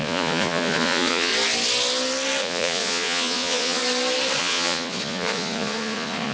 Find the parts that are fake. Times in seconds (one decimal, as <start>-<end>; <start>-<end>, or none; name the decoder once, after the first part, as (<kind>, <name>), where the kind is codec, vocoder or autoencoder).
0.0-1.3 (vocoder, Vocos); 2.4-3.8; 4.4-6.3